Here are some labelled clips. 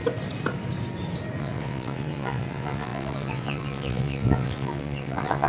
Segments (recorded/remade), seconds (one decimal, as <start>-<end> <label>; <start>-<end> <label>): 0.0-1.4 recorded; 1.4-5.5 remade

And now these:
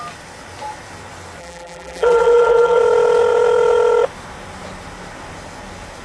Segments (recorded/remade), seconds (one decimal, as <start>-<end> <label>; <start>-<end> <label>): 0.0-1.4 recorded; 1.4-2.8 remade; 2.8-6.0 recorded

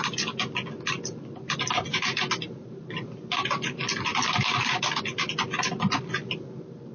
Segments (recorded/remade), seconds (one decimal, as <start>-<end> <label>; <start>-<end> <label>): 0.0-1.9 recorded; 1.9-3.1 remade; 3.1-6.9 recorded

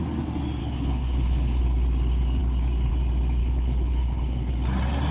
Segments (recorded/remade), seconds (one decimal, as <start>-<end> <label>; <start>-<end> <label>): 0.0-0.6 recorded; 0.6-1.6 remade; 1.6-3.4 recorded; 3.4-4.5 remade; 4.5-5.1 recorded

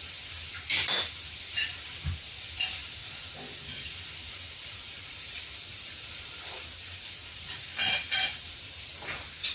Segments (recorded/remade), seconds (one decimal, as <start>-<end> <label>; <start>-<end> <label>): 0.0-1.7 remade; 1.7-2.3 recorded; 2.3-2.8 remade; 2.8-5.1 recorded; 5.1-9.5 remade